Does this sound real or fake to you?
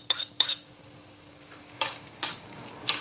fake